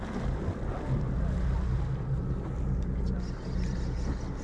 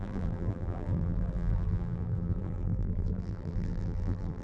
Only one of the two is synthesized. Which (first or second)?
second